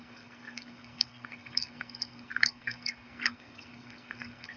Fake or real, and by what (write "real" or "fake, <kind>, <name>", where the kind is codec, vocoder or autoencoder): fake, codec, SNAC